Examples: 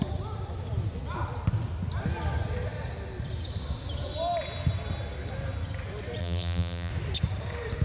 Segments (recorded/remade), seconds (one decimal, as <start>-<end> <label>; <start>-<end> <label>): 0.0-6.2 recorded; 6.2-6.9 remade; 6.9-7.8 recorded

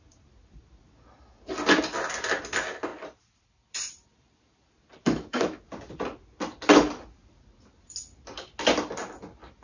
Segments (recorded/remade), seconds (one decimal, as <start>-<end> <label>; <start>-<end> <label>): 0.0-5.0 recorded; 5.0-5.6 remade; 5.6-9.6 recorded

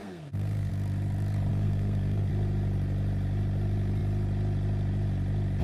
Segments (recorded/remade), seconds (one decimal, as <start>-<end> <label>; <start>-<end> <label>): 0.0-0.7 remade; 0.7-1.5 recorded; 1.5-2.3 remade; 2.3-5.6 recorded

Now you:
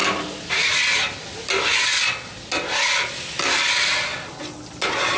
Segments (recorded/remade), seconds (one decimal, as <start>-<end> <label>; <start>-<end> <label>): 0.0-5.2 recorded

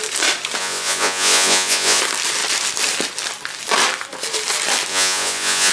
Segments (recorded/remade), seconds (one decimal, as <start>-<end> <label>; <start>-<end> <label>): 0.0-0.6 recorded; 0.6-2.0 remade; 2.0-4.9 recorded; 4.9-5.7 remade

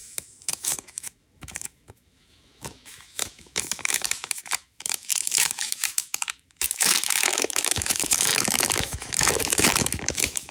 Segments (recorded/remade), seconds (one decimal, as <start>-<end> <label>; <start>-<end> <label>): 0.0-10.5 remade

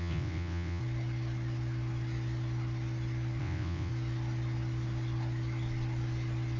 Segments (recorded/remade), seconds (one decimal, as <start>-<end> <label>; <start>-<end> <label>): 0.0-0.8 remade; 0.8-3.4 recorded; 3.4-3.9 remade; 3.9-6.6 recorded